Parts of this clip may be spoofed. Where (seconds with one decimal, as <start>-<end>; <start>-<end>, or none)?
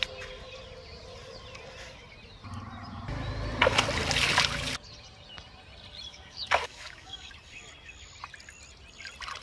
6.1-7.3